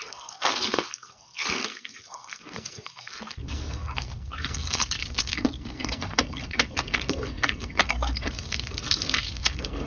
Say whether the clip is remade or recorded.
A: remade